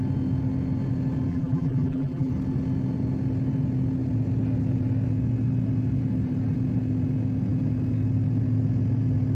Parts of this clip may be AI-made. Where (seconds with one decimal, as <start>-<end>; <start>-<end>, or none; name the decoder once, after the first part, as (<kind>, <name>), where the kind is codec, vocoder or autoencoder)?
1.3-2.3 (vocoder, BigVGAN v2)